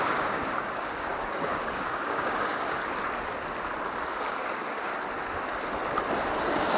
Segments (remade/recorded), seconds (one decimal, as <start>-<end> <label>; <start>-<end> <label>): 0.0-2.8 remade; 2.8-4.3 recorded; 4.3-4.9 remade; 4.9-6.8 recorded